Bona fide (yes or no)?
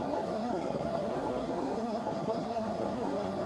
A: no